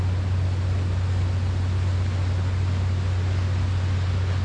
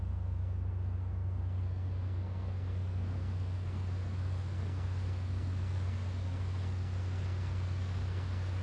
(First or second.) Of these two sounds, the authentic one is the first